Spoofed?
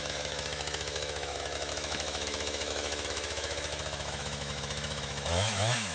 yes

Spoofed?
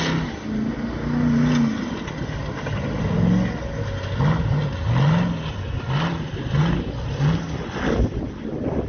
no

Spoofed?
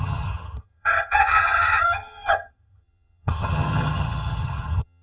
yes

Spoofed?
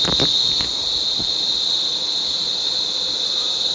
no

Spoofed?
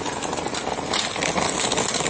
no